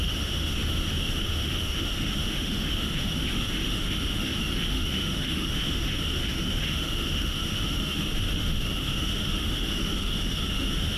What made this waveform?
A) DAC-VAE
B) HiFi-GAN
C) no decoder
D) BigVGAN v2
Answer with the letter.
A